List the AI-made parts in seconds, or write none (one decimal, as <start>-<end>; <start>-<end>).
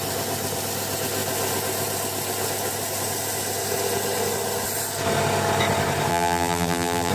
6.1-7.1